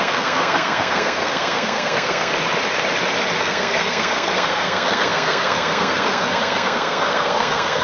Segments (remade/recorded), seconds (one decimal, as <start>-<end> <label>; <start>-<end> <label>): 0.0-2.3 remade; 2.3-3.4 recorded; 3.4-7.8 remade